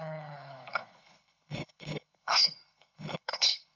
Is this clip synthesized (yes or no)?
yes